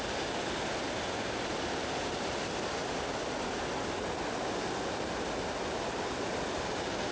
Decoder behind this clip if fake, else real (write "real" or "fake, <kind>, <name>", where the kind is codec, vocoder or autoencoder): real